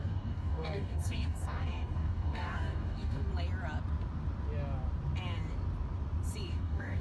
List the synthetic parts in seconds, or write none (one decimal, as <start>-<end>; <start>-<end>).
0.0-3.3; 6.5-7.0